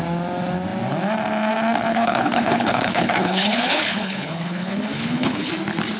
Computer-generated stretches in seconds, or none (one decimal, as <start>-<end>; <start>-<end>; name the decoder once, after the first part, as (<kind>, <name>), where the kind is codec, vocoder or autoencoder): 1.9-5.5 (codec, HILCodec)